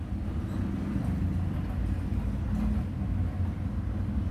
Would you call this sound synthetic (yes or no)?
no